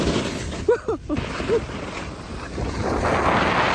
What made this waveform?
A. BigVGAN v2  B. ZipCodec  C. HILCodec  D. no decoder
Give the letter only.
D